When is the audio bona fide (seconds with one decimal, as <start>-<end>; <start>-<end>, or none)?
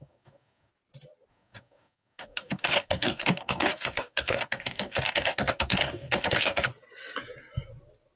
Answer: 0.7-1.3; 6.7-8.2